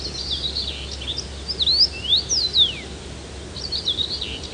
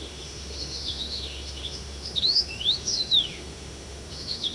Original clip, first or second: first